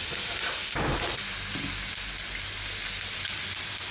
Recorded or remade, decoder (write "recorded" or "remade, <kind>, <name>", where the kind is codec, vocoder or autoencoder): recorded